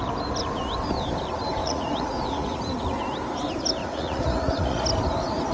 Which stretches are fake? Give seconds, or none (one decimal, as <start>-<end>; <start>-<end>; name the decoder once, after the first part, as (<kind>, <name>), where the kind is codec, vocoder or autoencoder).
1.6-2.6 (vocoder, Vocos); 3.8-4.8